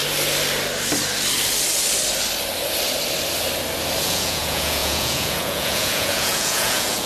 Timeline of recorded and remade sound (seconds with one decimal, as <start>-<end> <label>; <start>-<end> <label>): 0.0-4.0 recorded; 4.0-7.1 remade